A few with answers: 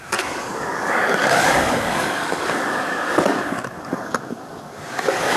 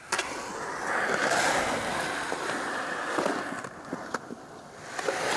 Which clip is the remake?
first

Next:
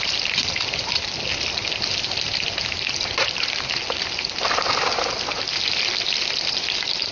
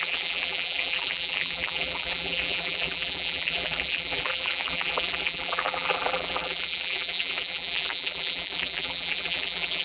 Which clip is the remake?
second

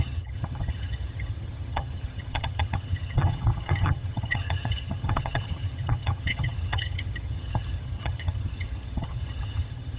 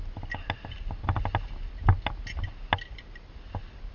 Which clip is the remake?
first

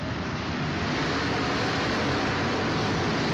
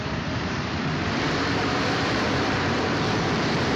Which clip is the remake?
second